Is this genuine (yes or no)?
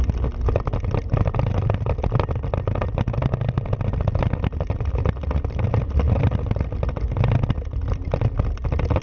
yes